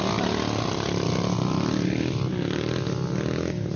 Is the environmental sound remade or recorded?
recorded